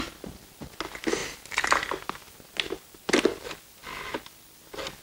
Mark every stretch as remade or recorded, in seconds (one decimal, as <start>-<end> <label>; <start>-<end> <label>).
0.0-5.0 recorded